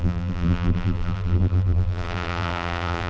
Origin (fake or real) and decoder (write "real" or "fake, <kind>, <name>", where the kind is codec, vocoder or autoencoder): fake, vocoder, BigVGAN v2